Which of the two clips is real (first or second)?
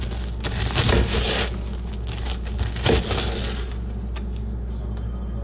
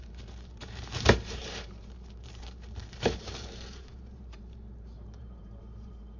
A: first